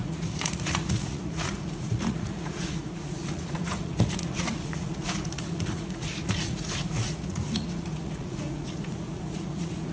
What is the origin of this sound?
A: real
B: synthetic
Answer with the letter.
B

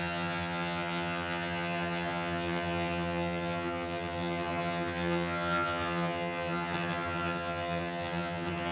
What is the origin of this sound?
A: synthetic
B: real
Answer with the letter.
A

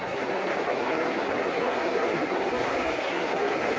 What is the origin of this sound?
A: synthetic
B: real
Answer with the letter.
A